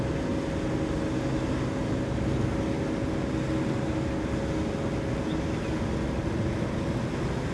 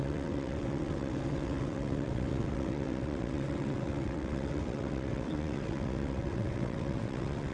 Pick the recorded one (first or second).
first